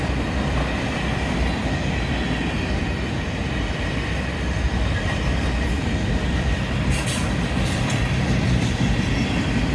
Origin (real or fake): fake